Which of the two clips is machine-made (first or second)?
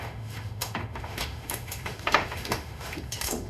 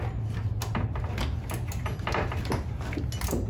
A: first